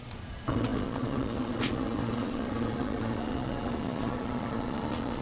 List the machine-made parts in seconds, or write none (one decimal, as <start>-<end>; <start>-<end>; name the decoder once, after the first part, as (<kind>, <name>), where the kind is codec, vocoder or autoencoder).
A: 0.0-5.2 (vocoder, Vocos)